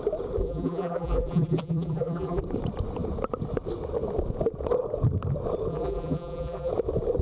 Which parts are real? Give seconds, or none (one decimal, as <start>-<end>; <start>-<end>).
0.0-0.4; 2.4-5.7; 6.7-7.2